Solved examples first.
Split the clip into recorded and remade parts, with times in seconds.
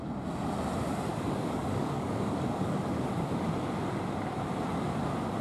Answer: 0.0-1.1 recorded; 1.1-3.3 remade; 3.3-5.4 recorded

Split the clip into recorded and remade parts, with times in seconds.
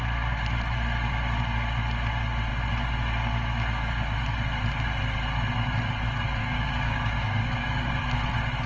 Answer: 0.0-6.4 recorded; 6.4-8.0 remade; 8.0-8.7 recorded